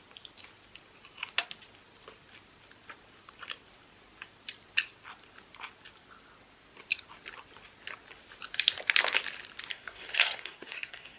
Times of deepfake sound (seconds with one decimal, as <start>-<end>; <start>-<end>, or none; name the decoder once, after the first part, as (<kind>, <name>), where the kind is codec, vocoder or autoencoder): 9.7-11.2 (codec, SNAC)